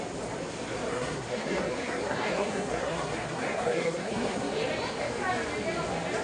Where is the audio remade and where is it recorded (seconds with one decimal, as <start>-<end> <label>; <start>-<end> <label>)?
0.0-0.9 recorded; 0.9-4.6 remade; 4.6-6.2 recorded